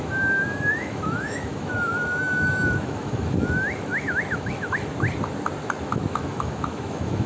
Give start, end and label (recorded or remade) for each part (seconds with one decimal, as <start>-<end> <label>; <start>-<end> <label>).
0.0-4.9 remade; 4.9-5.8 recorded; 5.8-7.3 remade